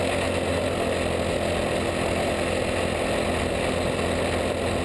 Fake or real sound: real